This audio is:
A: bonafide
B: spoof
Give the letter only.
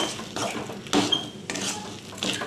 A